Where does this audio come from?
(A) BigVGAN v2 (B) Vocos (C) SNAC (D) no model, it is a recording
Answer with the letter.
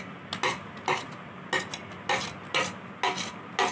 D